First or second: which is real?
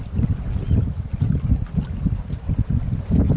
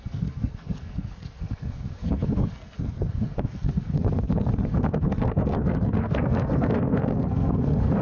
first